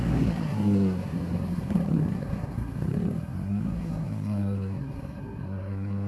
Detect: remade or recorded remade